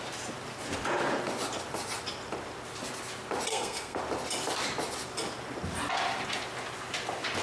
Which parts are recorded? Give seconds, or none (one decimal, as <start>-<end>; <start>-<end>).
0.0-3.5; 4.0-7.4